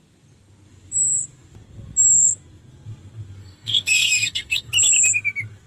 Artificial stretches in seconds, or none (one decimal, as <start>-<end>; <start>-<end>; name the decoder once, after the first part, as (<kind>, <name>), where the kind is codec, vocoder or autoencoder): 3.4-4.7 (codec, SNAC)